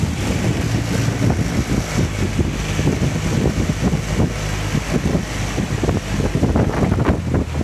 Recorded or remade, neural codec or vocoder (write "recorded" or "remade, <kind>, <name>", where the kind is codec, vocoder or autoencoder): recorded